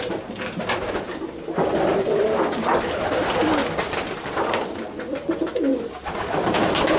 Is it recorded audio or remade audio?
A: recorded